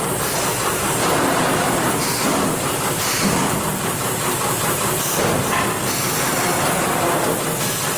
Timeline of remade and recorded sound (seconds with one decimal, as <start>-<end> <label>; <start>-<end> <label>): 0.0-0.7 recorded; 0.7-5.5 remade; 5.5-6.5 recorded; 6.5-7.2 remade; 7.2-8.0 recorded